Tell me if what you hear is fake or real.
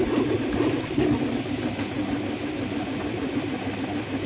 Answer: real